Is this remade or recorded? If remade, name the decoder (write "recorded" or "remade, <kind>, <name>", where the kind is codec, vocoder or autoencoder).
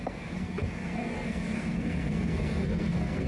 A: remade, codec, SNAC